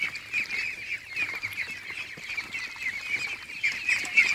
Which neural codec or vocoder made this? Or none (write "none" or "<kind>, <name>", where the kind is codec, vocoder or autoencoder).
none